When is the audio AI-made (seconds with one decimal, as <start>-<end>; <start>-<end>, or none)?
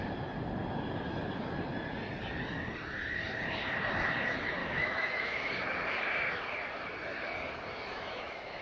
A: 4.6-5.5; 7.9-8.6